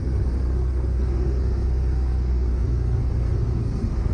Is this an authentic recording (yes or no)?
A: no